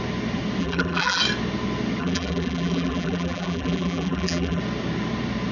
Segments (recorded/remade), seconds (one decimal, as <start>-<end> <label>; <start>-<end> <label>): 0.0-0.6 recorded; 0.6-1.2 remade; 1.2-2.0 recorded; 2.0-4.6 remade; 4.6-5.5 recorded